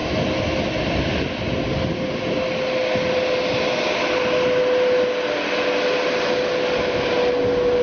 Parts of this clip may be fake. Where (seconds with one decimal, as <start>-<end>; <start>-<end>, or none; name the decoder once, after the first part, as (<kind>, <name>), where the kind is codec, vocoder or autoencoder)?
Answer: none